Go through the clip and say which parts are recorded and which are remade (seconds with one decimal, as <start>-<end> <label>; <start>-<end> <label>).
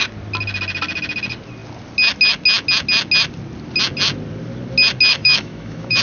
0.0-5.1 recorded; 5.1-6.0 remade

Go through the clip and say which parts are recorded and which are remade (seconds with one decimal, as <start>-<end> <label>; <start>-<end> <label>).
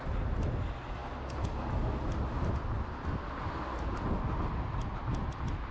0.0-5.7 recorded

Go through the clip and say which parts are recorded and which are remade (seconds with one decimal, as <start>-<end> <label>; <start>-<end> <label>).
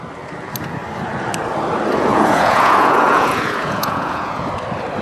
0.0-2.1 recorded; 2.1-4.5 remade; 4.5-5.0 recorded